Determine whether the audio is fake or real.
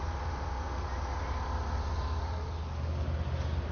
real